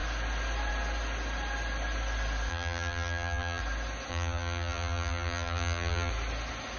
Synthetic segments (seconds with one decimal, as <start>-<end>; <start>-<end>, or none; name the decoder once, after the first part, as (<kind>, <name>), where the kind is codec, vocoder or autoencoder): 2.5-3.6 (vocoder, BigVGAN v2); 4.1-6.1